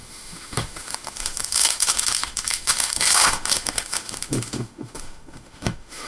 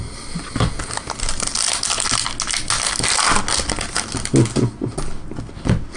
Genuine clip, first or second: second